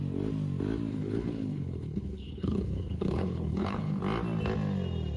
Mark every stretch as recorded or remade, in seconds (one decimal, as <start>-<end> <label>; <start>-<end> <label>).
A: 0.0-0.9 recorded; 0.9-4.0 remade; 4.0-5.2 recorded